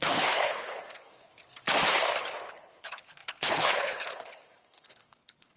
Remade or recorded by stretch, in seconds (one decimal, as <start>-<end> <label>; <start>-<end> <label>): 0.0-1.4 remade; 1.4-2.5 recorded; 2.5-5.6 remade